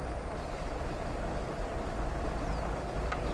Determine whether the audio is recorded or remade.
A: remade